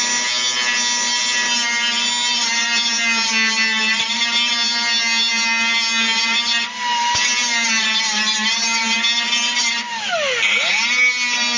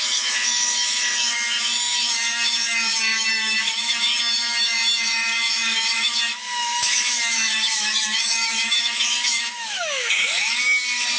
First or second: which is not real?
second